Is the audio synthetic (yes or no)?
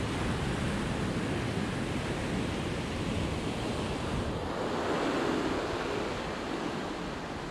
no